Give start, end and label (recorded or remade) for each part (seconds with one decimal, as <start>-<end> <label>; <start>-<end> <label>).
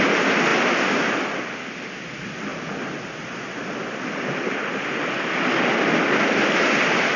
0.0-7.2 recorded